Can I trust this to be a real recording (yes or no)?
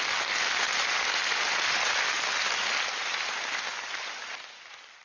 yes